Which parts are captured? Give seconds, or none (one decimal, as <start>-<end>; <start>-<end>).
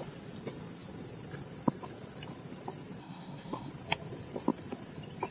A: 0.0-3.0; 3.7-5.3